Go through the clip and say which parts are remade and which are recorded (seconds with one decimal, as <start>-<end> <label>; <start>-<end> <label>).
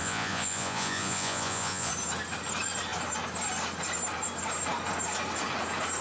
0.0-1.9 remade; 1.9-6.0 recorded